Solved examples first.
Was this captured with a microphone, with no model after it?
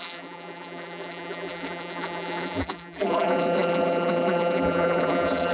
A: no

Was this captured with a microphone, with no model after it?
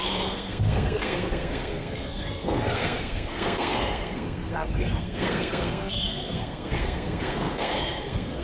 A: no